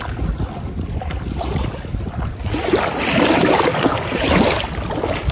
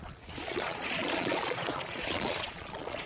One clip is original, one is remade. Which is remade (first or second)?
second